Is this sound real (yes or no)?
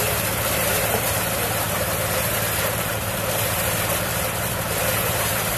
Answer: no